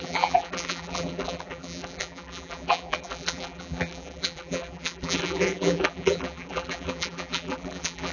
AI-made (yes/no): yes